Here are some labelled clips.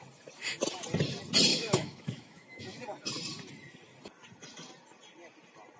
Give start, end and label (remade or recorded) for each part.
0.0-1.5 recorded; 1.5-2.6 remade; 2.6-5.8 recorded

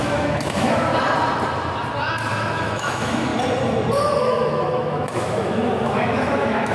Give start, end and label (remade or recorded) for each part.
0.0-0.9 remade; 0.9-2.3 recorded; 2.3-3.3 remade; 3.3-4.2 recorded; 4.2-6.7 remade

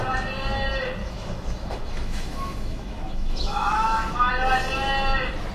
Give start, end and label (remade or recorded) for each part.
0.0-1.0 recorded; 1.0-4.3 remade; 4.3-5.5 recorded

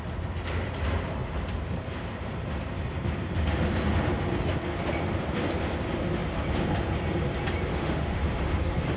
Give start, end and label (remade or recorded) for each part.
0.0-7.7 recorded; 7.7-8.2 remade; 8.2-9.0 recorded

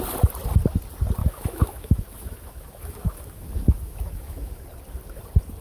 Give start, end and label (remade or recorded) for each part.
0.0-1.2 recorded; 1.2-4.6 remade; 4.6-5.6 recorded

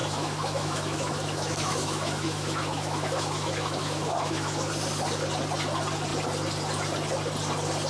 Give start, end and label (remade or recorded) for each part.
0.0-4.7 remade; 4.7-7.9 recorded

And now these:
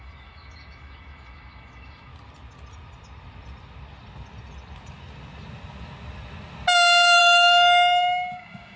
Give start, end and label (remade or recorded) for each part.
0.0-2.1 remade; 2.1-7.2 recorded; 7.2-8.8 remade

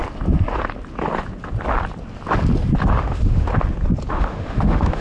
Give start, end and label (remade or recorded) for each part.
0.0-3.0 recorded; 3.0-3.5 remade; 3.5-4.1 recorded; 4.1-5.0 remade